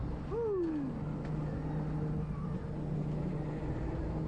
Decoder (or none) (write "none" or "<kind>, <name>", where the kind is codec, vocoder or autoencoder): none